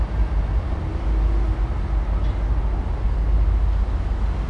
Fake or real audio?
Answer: real